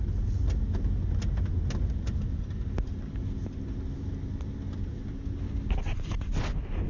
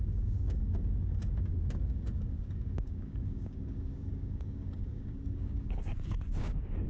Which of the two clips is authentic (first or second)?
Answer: first